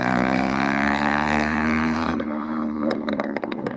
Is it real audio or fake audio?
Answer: fake